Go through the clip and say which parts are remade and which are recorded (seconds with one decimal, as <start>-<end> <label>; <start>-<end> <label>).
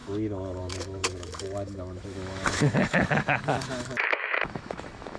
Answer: 0.0-5.2 remade